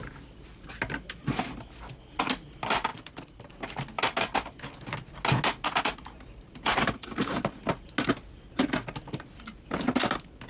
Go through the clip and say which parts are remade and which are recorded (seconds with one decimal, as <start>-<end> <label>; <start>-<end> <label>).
0.0-2.9 recorded; 2.9-3.5 remade; 3.5-10.5 recorded